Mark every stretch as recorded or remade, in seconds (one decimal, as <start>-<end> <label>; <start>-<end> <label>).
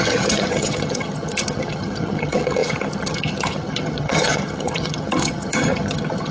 0.0-6.3 remade